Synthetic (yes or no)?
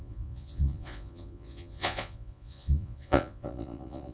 yes